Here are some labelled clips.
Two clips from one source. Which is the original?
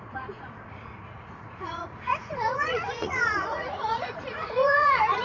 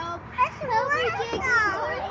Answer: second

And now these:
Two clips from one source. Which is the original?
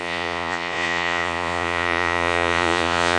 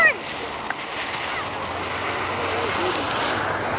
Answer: second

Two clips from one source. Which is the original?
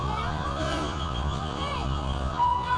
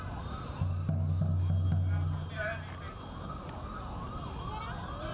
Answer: second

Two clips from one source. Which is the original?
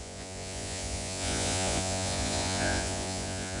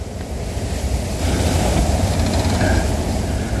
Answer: second